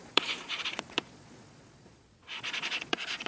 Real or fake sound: fake